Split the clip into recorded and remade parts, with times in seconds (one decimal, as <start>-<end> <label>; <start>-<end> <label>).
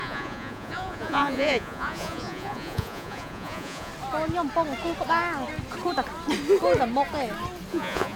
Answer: 0.0-3.9 remade; 3.9-7.7 recorded; 7.7-8.2 remade